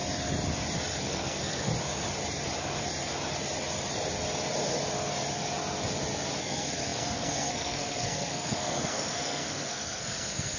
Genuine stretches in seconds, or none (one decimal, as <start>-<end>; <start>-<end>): 0.0-1.0; 1.7-6.4

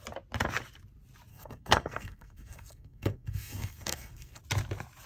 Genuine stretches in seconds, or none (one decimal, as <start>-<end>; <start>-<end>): 0.0-1.3; 4.4-5.1

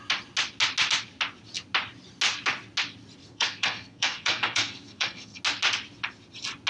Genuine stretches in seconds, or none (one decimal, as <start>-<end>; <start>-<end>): 0.0-3.2; 5.4-6.7

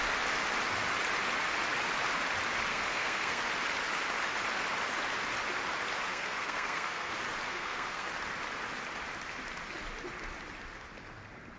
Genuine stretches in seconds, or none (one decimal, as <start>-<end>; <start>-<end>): 0.0-2.7; 3.4-6.1; 7.1-7.5; 8.1-11.6

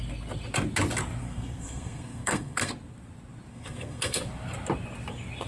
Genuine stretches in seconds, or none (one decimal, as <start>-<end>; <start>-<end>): 0.0-1.2; 2.7-3.5; 4.2-5.5